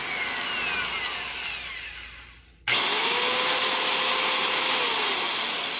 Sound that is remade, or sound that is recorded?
recorded